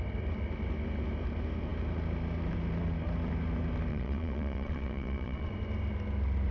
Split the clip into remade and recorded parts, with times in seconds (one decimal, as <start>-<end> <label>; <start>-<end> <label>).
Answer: 0.0-3.9 recorded; 3.9-5.5 remade; 5.5-6.5 recorded